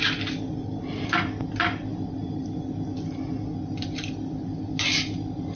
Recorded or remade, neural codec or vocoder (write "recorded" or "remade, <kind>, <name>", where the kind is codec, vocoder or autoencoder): recorded